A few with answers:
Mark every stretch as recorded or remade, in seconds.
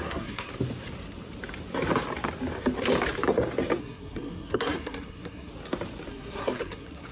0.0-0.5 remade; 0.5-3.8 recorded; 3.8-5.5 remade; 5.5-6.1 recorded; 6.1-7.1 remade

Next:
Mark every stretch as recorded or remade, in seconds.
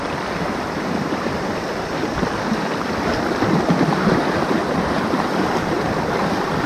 0.0-4.6 remade; 4.6-5.3 recorded; 5.3-6.7 remade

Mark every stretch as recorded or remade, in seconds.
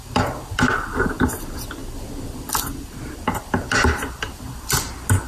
0.0-5.3 recorded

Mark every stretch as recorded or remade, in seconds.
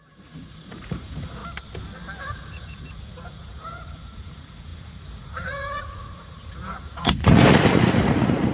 0.0-1.4 remade; 1.4-2.2 recorded; 2.2-8.5 remade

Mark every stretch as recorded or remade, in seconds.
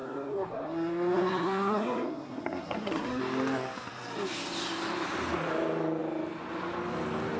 0.0-3.2 remade; 3.2-7.4 recorded